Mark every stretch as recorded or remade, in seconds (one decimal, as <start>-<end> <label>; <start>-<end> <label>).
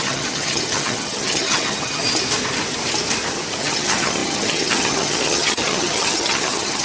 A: 0.0-2.0 remade; 2.0-3.6 recorded; 3.6-6.8 remade